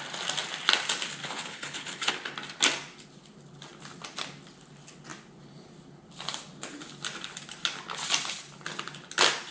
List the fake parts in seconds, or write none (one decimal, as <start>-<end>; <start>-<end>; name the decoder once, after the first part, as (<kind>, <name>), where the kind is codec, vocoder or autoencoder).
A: 1.2-2.1 (codec, HILCodec)